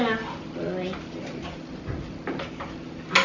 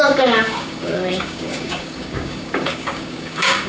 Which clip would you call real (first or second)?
first